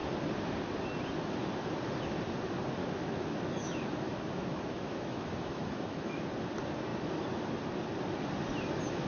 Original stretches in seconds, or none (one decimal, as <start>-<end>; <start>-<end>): 0.0-2.8; 6.2-9.1